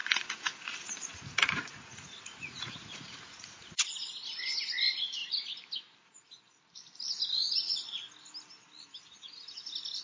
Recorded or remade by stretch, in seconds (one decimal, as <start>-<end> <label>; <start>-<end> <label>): 0.0-3.9 remade; 3.9-10.0 recorded